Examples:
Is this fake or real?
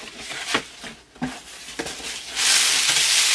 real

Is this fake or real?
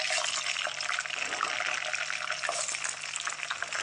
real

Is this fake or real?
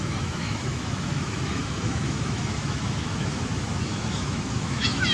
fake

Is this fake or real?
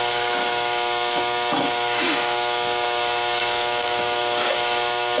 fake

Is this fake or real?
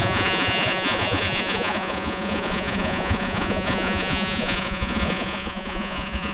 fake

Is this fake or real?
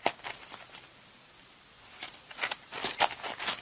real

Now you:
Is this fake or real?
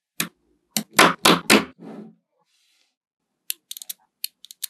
real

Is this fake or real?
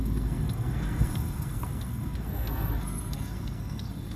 fake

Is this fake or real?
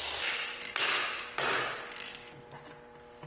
real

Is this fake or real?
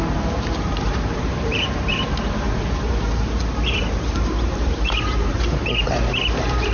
fake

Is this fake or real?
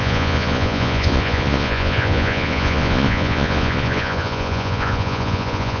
fake